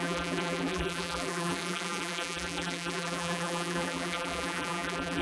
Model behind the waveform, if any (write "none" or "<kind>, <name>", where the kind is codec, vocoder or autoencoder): vocoder, BigVGAN v2